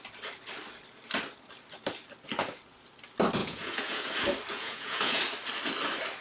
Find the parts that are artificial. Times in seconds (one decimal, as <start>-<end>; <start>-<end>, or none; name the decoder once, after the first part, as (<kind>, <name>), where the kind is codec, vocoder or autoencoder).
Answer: 3.4-4.1 (vocoder, Vocos); 4.5-5.2